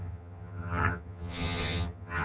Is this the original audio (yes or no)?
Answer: no